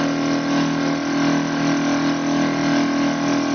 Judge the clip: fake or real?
real